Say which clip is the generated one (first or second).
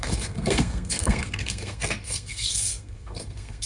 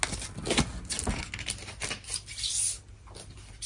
first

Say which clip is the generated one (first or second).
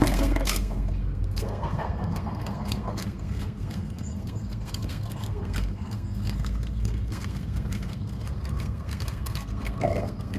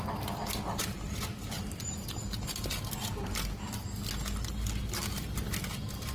first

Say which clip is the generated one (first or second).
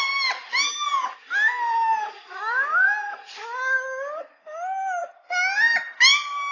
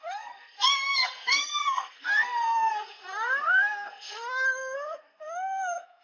second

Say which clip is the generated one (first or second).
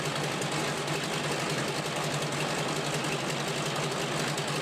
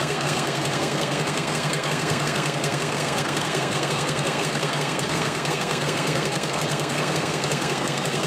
second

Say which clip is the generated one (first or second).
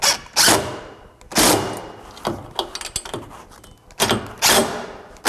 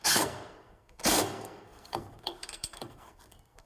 second